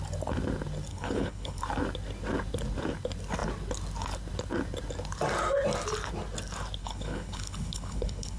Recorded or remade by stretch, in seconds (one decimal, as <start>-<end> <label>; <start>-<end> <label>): 0.0-0.9 recorded; 0.9-1.6 remade; 1.6-6.8 recorded; 6.8-8.4 remade